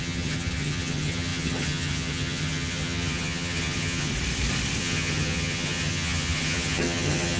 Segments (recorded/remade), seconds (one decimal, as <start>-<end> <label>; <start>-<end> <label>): 0.0-4.1 remade; 4.1-4.8 recorded; 4.8-7.4 remade